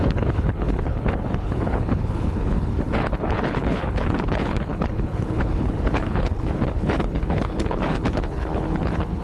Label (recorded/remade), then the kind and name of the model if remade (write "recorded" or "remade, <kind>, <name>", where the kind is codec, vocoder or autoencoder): remade, codec, HILCodec